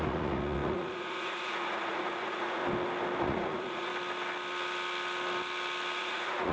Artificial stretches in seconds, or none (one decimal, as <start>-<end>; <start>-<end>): 0.0-2.6; 3.2-3.9; 6.0-6.5

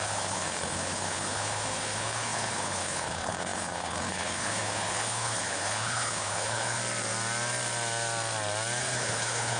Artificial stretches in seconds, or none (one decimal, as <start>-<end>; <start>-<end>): 0.0-6.8; 8.8-9.6

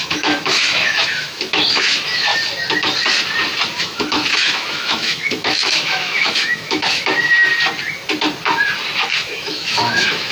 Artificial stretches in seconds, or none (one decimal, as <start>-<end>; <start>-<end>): 0.0-2.3; 3.8-7.3; 9.0-10.3

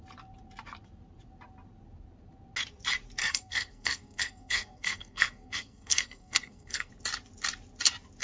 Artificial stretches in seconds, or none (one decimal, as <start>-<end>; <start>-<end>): 3.2-6.9